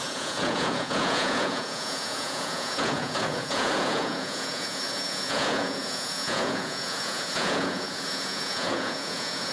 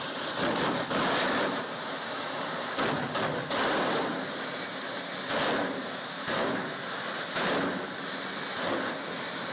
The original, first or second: second